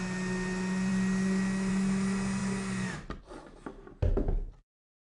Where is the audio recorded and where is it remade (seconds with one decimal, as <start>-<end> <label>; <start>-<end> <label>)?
0.0-5.1 recorded